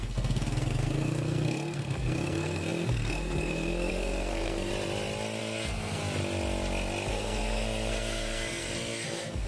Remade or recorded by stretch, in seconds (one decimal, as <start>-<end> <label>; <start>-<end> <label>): 0.0-4.7 remade; 4.7-5.4 recorded; 5.4-6.0 remade; 6.0-7.1 recorded; 7.1-9.5 remade